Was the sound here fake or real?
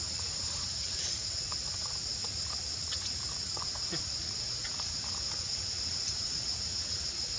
fake